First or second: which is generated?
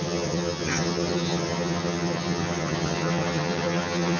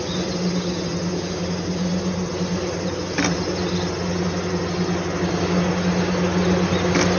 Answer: first